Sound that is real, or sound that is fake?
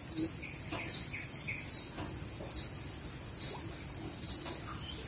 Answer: real